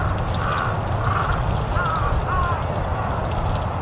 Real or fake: real